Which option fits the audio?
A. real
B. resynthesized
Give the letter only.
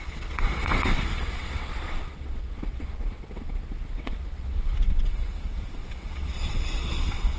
B